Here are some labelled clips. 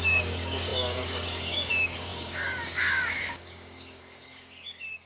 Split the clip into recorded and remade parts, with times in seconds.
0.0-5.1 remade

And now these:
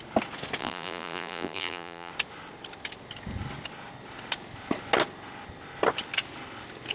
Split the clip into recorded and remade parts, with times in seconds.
0.0-0.6 recorded; 0.6-2.1 remade; 2.1-6.9 recorded

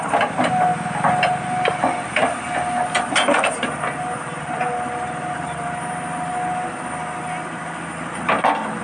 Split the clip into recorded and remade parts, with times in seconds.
0.0-8.8 recorded

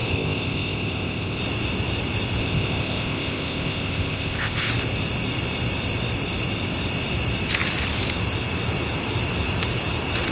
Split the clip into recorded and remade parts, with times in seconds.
0.0-1.4 remade; 1.4-2.4 recorded; 2.4-4.7 remade; 4.7-10.3 recorded